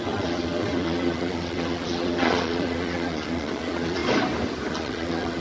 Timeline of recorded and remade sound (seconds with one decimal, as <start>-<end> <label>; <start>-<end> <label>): 0.0-4.0 remade; 4.0-4.7 recorded; 4.7-5.4 remade